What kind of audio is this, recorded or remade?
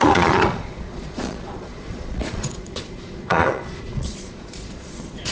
remade